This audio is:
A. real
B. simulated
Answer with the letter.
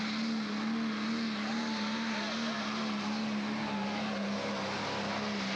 A